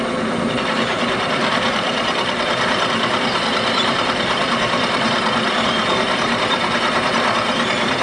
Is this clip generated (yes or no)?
yes